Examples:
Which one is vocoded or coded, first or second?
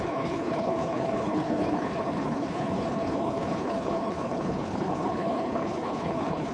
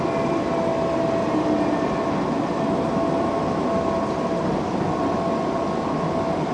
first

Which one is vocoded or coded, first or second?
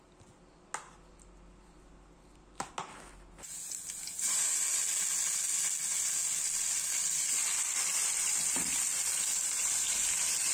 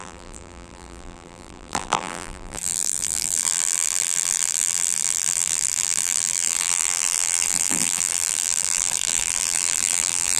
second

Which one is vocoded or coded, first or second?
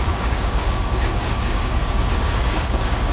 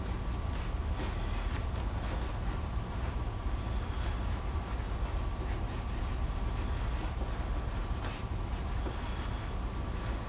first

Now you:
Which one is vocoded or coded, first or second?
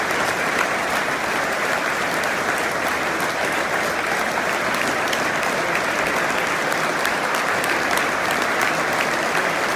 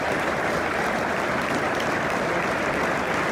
second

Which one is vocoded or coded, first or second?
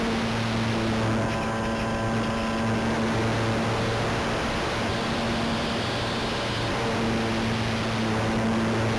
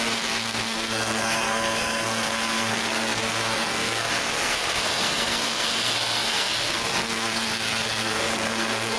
second